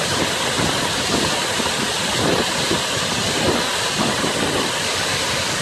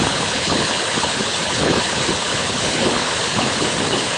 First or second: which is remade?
second